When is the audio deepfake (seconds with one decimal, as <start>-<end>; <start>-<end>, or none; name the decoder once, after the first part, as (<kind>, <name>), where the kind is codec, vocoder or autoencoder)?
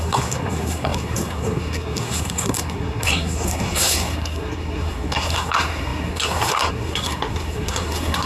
0.0-8.3 (codec, SNAC)